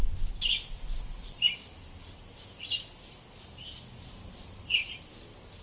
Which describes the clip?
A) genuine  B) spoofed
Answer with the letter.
A